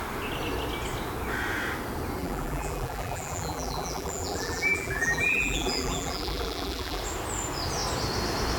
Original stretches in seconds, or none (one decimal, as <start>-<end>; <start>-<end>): 0.0-2.2; 7.0-8.6

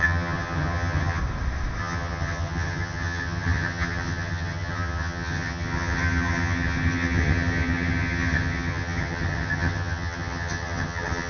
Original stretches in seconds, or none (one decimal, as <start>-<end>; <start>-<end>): 1.2-1.8

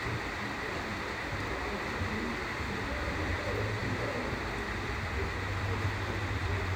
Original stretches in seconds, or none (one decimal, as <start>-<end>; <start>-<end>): 0.0-6.8

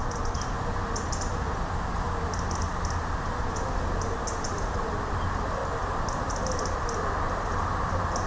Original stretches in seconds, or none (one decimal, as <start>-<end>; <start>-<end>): 0.0-8.3